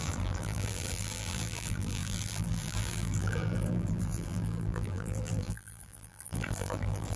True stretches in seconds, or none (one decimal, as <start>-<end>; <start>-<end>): none